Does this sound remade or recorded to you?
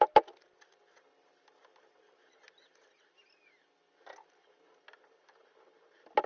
recorded